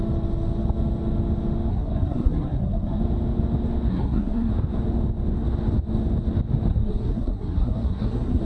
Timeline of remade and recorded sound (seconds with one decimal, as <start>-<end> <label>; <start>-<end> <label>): 0.0-1.7 recorded; 1.7-3.0 remade; 3.0-3.9 recorded; 3.9-4.5 remade; 4.5-6.7 recorded; 6.7-8.4 remade